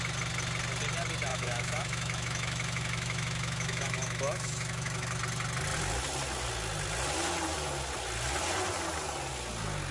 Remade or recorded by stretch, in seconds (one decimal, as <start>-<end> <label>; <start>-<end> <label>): 0.0-1.3 recorded; 1.3-5.2 remade; 5.2-9.9 recorded

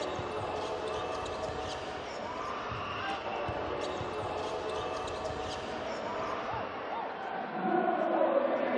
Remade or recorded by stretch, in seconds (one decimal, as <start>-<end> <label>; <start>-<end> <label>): 0.0-8.8 recorded

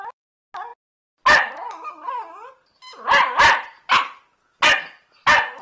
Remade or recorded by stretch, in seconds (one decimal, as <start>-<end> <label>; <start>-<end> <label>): 0.0-5.6 recorded

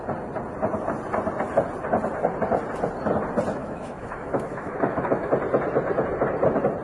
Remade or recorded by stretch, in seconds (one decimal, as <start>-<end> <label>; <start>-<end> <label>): 0.0-3.6 recorded; 3.6-5.3 remade; 5.3-6.8 recorded

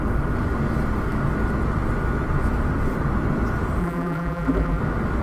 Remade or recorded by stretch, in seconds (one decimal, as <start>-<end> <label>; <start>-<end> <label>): 0.0-3.8 recorded; 3.8-4.8 remade; 4.8-5.2 recorded

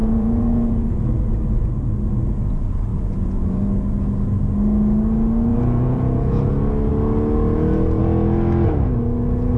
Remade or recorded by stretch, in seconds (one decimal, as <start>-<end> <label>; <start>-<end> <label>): 0.0-1.1 remade; 1.1-2.9 recorded; 2.9-3.7 remade; 3.7-5.5 recorded; 5.5-6.5 remade; 6.5-9.6 recorded

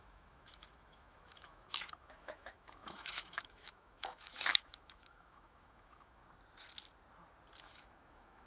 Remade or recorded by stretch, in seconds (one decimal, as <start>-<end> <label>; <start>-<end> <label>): 0.0-6.2 remade; 6.2-7.6 recorded; 7.6-8.5 remade

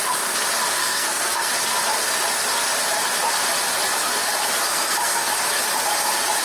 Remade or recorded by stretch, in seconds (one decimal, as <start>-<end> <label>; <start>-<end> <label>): 0.0-0.8 recorded; 0.8-1.5 remade; 1.5-4.7 recorded; 4.7-5.3 remade; 5.3-6.4 recorded